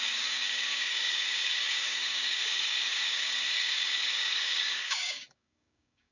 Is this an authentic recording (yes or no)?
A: no